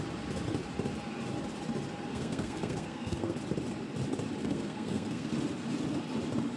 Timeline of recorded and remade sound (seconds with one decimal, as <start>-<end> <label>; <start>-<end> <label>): 0.0-2.1 recorded; 2.1-3.4 remade; 3.4-4.4 recorded; 4.4-5.3 remade; 5.3-6.6 recorded